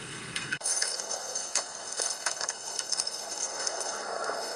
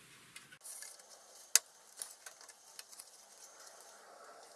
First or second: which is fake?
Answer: first